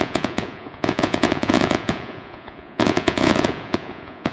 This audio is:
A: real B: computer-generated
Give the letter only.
B